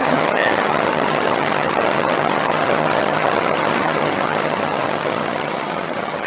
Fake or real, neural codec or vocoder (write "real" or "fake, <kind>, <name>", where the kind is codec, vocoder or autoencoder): fake, vocoder, HiFi-GAN